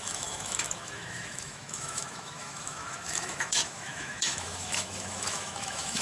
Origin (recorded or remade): remade